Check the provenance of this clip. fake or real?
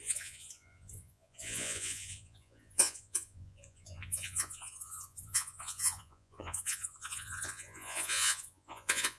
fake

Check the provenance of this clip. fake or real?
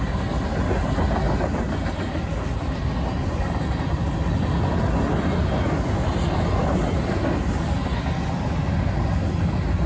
real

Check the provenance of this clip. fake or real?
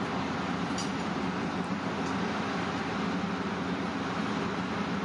real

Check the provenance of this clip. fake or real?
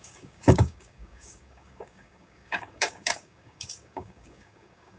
fake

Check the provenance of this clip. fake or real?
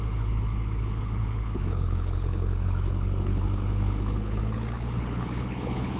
fake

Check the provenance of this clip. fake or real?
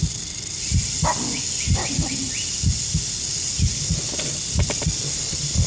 real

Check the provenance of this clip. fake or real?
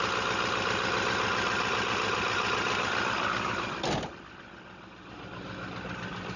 real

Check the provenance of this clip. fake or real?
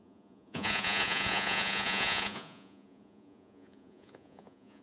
fake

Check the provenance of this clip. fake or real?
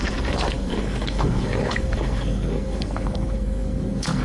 fake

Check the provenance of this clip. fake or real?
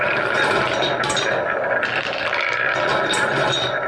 real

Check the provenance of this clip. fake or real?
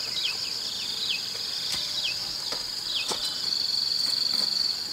real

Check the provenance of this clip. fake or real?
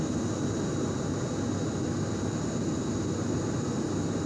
real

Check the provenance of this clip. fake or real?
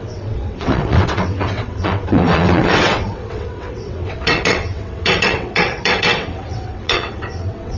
fake